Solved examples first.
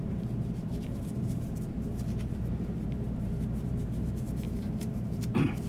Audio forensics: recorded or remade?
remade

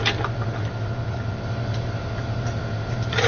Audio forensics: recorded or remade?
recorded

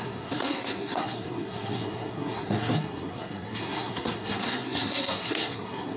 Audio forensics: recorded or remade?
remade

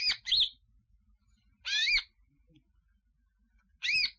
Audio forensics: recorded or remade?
recorded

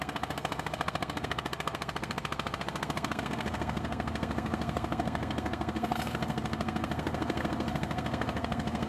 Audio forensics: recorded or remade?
remade